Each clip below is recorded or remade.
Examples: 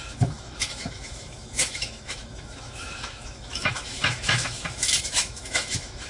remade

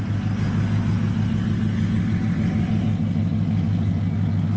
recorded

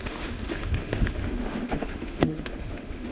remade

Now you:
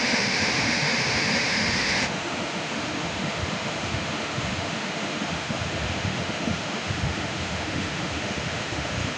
remade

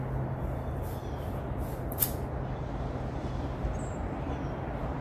recorded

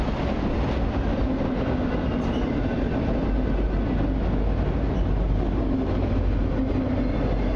recorded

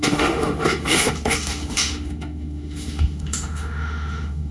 remade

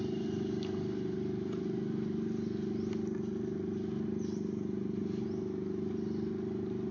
recorded